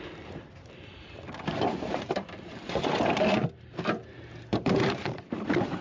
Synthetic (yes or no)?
yes